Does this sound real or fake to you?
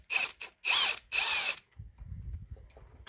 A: real